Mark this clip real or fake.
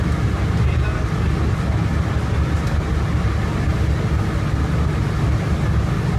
real